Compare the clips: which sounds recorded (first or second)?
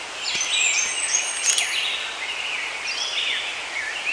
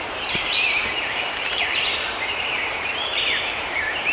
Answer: first